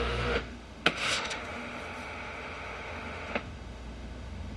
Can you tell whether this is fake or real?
fake